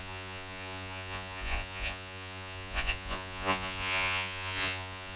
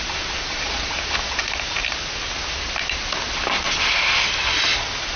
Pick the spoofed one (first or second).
first